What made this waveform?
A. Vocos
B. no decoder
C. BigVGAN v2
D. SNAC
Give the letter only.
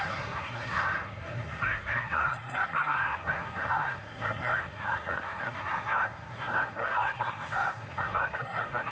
D